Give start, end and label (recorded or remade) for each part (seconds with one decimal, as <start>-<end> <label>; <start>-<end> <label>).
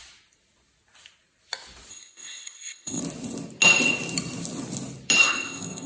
0.0-1.9 recorded; 1.9-3.0 remade; 3.0-5.2 recorded; 5.2-5.9 remade